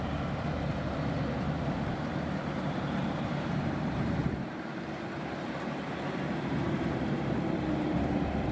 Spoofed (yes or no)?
yes